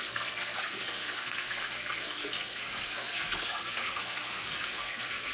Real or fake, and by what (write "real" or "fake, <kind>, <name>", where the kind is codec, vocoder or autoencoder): fake, codec, SNAC